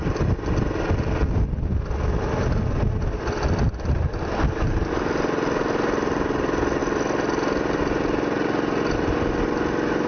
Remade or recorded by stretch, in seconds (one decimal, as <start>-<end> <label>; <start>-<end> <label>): 0.0-10.1 recorded